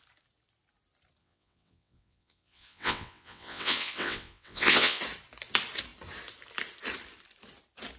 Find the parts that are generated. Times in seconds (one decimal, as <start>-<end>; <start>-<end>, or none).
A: 1.2-5.0